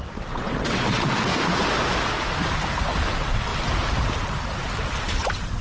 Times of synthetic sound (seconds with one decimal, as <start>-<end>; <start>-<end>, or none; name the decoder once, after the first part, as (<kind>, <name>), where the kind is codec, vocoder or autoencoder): 0.0-1.3 (vocoder, WaveNeXt); 3.1-3.5; 5.0-5.6